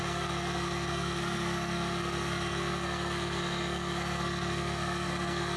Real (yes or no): no